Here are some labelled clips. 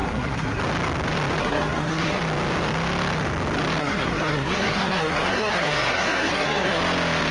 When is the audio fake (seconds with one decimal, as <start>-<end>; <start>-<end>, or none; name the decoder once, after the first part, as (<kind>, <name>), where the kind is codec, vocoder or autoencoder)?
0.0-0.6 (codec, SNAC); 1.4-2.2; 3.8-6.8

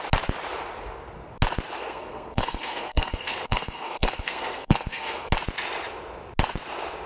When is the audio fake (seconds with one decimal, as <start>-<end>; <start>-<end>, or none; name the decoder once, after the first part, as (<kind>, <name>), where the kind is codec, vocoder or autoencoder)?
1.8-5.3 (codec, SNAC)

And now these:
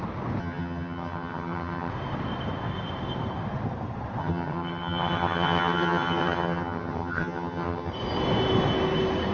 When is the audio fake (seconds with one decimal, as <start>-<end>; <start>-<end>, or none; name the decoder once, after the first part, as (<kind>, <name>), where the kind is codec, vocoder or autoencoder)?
0.4-1.9 (vocoder, HiFi-GAN); 4.2-7.9